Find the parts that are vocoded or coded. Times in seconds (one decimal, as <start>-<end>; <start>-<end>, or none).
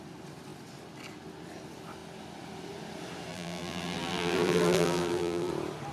3.3-5.5